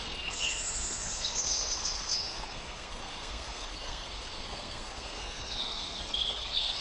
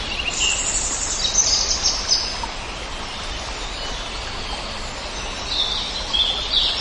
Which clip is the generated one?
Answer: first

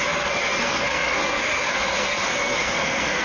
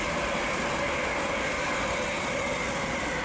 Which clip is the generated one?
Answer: first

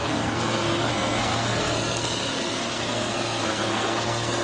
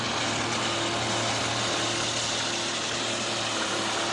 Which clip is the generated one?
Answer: first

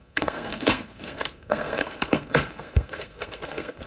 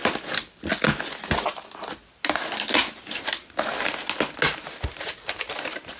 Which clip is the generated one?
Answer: first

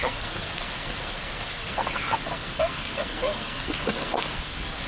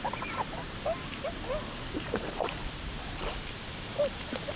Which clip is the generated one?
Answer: first